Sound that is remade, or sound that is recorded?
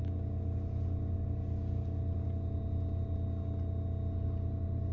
recorded